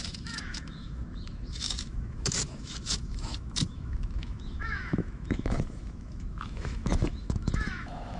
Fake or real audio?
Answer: fake